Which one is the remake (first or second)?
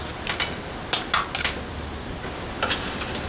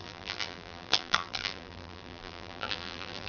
second